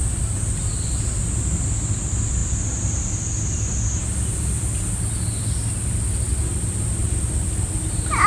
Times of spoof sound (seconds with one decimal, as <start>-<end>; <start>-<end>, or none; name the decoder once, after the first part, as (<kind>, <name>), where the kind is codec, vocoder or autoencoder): none